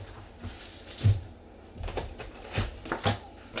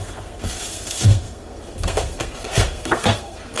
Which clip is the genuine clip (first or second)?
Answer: first